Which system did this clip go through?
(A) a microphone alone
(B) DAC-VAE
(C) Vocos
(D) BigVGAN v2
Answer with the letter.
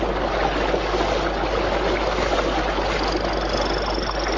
A